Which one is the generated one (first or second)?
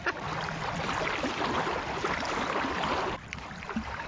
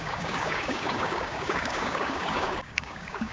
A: second